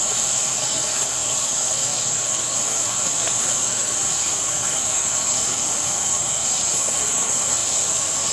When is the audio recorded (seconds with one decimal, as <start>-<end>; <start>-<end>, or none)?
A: none